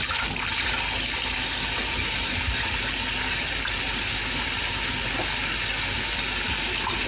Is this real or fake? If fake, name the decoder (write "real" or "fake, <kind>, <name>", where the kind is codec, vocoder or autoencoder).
real